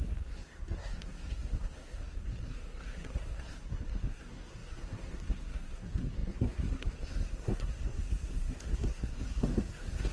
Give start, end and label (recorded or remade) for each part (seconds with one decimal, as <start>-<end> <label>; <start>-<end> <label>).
0.0-10.1 remade